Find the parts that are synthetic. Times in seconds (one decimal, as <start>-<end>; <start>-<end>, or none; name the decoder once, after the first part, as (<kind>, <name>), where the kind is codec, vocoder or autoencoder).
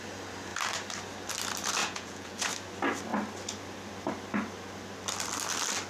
1.8-2.5 (vocoder, Vocos)